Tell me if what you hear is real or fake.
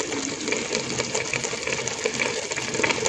real